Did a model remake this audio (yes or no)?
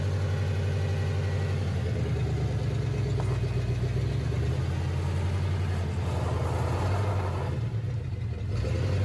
no